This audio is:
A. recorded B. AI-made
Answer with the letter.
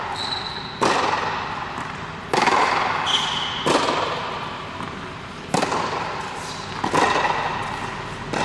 A